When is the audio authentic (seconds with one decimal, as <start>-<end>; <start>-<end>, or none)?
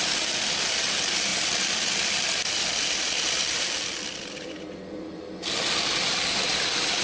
0.0-7.0